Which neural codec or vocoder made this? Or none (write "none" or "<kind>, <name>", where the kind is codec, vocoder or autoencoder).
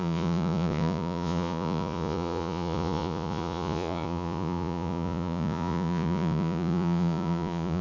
vocoder, Vocos